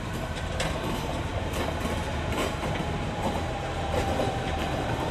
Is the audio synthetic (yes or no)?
yes